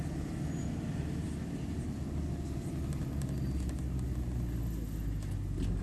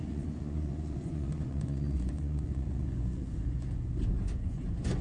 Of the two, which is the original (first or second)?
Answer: first